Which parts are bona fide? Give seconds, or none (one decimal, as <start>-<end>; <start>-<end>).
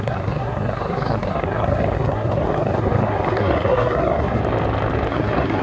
4.4-5.1